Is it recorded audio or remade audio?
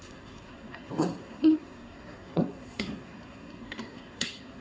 remade